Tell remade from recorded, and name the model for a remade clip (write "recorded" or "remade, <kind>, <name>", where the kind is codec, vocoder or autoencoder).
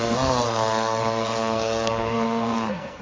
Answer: remade, codec, SNAC